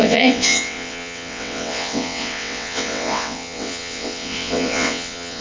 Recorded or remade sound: remade